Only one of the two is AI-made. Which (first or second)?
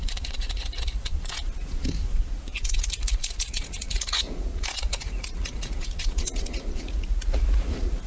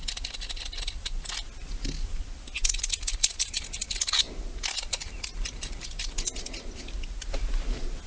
first